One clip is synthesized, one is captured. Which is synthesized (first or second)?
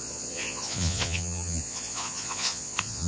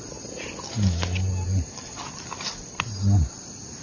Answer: first